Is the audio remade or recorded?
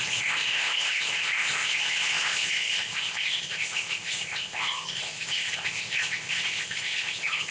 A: remade